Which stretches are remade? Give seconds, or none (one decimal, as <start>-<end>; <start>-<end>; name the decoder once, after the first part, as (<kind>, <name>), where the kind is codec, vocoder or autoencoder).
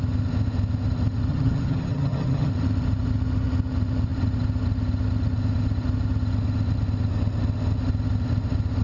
1.3-2.5 (vocoder, HiFi-GAN)